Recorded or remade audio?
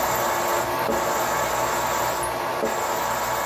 recorded